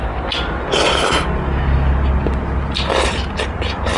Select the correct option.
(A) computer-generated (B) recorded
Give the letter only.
B